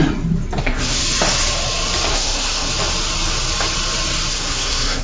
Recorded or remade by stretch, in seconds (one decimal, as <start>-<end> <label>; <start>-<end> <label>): 0.0-0.6 recorded; 0.6-1.0 remade; 1.0-2.1 recorded; 2.1-2.7 remade; 2.7-4.3 recorded; 4.3-5.0 remade